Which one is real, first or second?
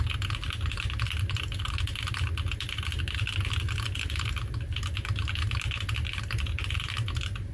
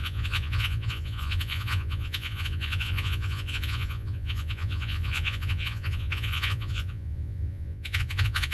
first